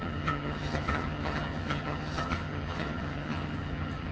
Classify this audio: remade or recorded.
remade